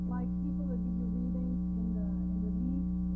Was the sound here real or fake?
real